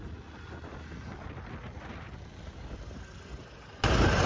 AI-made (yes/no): no